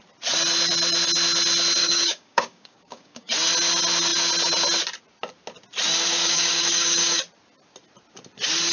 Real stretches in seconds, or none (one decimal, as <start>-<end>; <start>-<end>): 0.0-1.8; 3.3-6.1; 7.2-8.7

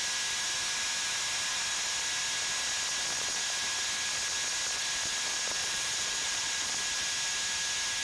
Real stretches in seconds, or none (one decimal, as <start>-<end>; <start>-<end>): 0.0-5.6; 6.7-8.0

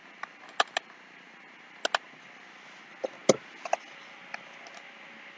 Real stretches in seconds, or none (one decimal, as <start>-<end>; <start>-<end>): 0.0-5.4

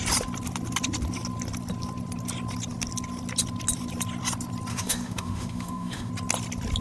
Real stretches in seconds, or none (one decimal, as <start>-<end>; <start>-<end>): 0.0-4.7; 6.1-6.8

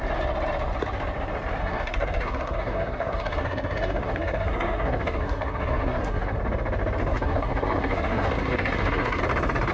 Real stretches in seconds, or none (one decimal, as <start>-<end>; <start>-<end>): 0.0-1.6; 6.4-7.1; 9.2-9.7

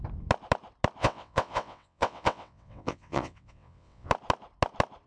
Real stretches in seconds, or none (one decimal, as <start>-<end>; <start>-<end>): 0.0-1.0; 4.1-5.1

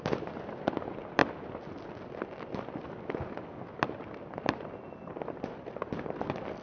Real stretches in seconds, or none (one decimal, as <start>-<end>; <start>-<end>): 0.0-6.6